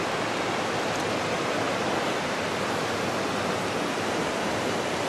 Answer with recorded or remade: recorded